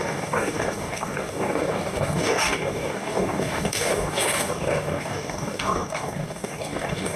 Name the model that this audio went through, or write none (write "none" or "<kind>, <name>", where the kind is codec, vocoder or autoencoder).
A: codec, DAC